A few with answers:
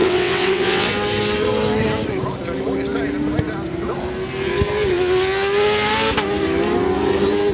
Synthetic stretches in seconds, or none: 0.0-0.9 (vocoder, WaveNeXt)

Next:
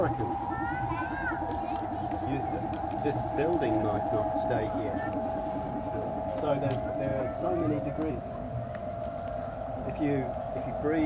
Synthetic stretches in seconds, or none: 3.0-6.6 (vocoder, BigVGAN v2)

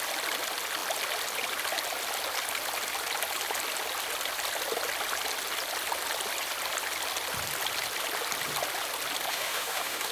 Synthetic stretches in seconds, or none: 9.3-10.1 (autoencoder, DAC-VAE)

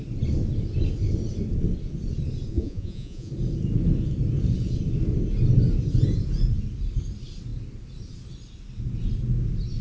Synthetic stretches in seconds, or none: 2.5-3.3 (vocoder, Vocos)

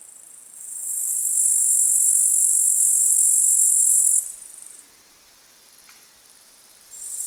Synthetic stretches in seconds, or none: 0.0-7.3 (vocoder, BigVGAN v2)